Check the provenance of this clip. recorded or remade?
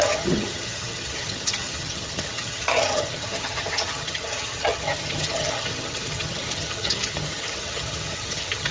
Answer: remade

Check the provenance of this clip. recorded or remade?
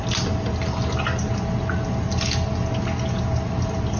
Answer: recorded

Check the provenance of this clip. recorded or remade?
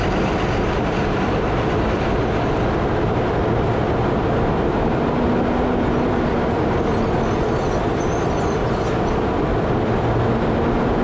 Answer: recorded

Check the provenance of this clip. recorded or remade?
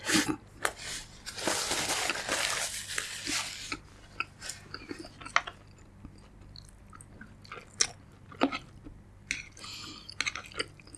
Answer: recorded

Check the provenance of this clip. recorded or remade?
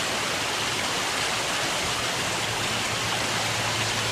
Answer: recorded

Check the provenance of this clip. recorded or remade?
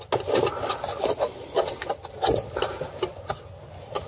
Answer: recorded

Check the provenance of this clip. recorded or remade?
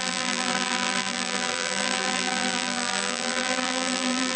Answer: remade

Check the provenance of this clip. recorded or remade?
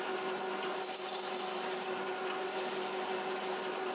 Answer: recorded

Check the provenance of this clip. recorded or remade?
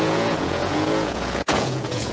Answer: remade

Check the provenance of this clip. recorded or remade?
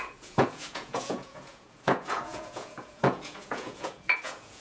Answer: remade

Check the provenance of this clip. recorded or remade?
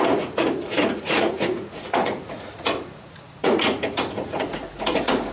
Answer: remade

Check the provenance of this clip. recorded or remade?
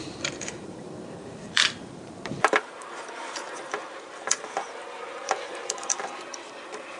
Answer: remade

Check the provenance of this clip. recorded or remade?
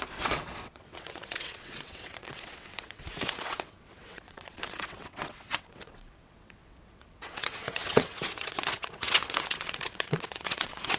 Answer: remade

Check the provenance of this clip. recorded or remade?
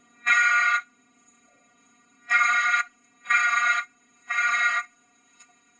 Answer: remade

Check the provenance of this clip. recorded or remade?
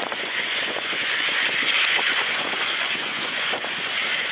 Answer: remade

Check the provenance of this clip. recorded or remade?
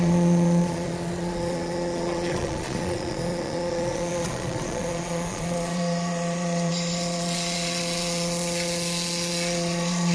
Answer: remade